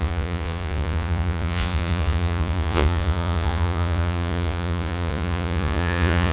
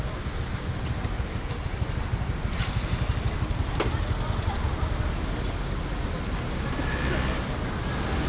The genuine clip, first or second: second